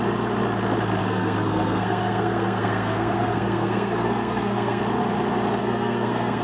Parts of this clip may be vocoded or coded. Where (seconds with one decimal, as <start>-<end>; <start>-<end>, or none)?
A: 1.0-4.8; 5.6-6.4